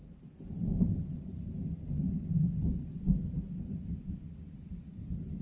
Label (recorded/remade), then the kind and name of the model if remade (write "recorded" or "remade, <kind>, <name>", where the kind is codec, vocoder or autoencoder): recorded